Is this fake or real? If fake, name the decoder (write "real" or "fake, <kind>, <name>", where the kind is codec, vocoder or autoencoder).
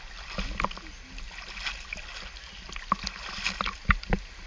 real